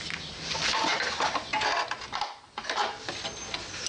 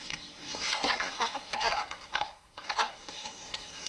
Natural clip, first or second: first